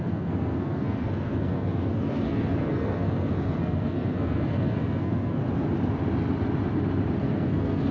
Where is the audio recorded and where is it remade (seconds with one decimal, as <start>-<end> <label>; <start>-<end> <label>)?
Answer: 0.0-5.4 remade; 5.4-7.2 recorded; 7.2-7.9 remade